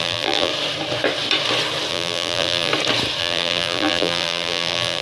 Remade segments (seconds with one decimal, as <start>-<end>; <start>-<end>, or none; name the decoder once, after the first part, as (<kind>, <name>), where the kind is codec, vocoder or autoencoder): 0.0-0.5 (vocoder, BigVGAN v2); 1.9-2.7; 3.2-5.0